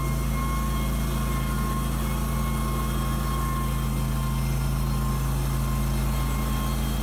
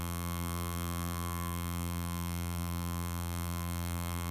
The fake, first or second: second